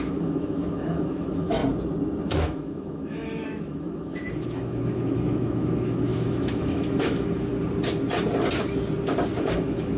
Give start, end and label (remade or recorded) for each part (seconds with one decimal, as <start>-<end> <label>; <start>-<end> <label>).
0.0-1.6 remade; 1.6-2.3 recorded; 2.3-7.5 remade; 7.5-9.4 recorded; 9.4-10.0 remade